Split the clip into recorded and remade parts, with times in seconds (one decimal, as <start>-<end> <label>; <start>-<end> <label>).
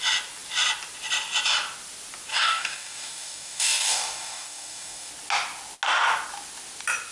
0.0-2.3 recorded; 2.3-5.1 remade; 5.1-7.1 recorded